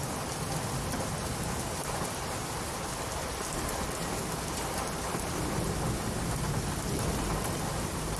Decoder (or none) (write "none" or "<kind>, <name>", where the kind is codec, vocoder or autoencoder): none